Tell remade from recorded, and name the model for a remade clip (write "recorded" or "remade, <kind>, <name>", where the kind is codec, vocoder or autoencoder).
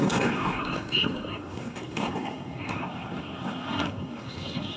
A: remade, codec, SNAC